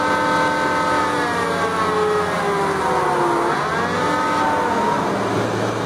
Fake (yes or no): no